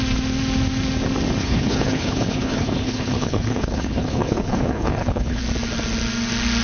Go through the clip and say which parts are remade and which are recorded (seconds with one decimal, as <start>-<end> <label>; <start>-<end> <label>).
0.0-1.4 recorded; 1.4-5.4 remade; 5.4-6.6 recorded